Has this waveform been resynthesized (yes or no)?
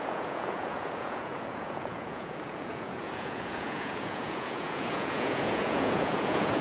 yes